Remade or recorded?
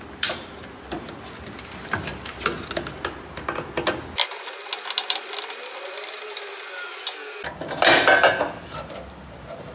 recorded